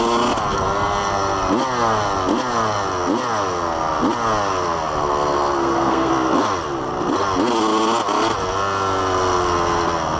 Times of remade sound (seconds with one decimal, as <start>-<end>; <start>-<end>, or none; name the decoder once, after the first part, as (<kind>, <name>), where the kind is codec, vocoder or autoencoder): 5.6-6.1 (codec, SNAC)